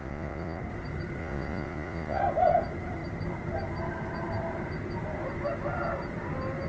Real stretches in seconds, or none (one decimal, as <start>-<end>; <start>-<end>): 0.6-1.2; 2.2-6.7